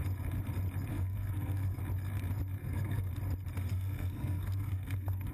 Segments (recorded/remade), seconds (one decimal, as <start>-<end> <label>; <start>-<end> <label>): 0.0-0.9 recorded; 0.9-1.8 remade; 1.8-2.6 recorded; 2.6-3.1 remade; 3.1-3.7 recorded; 3.7-5.3 remade